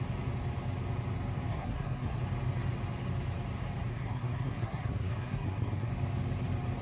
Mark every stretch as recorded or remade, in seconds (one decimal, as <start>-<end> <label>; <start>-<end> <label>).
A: 0.0-1.5 recorded; 1.5-2.2 remade; 2.2-3.9 recorded; 3.9-5.9 remade; 5.9-6.8 recorded

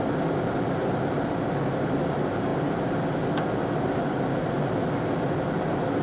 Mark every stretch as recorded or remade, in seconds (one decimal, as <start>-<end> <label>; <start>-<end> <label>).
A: 0.0-6.0 recorded